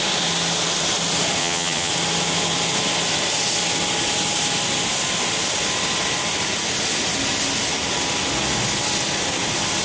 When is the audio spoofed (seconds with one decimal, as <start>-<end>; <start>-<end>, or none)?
1.4-1.9